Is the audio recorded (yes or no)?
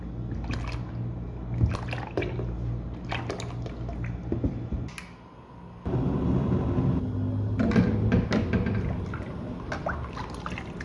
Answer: yes